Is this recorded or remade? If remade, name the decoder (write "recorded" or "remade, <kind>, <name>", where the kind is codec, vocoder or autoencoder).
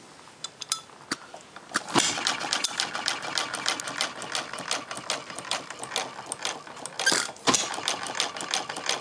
recorded